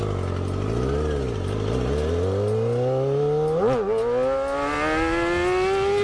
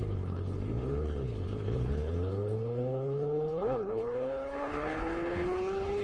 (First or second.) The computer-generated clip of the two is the second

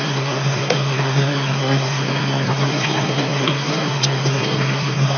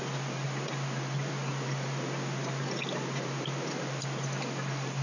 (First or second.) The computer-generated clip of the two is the first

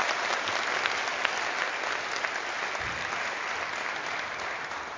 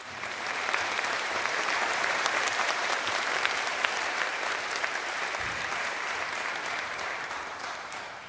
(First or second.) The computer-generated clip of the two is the second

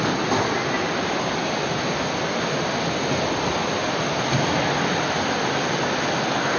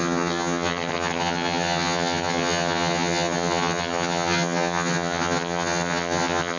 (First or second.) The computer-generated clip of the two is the second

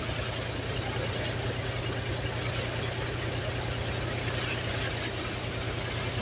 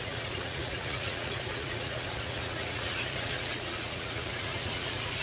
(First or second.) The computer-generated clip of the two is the second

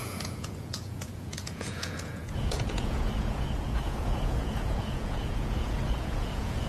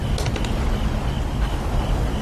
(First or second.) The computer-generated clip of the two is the first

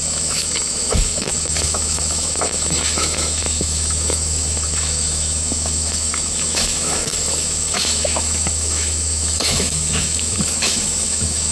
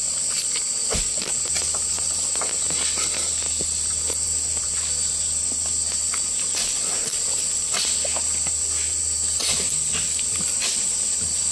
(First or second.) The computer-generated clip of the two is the first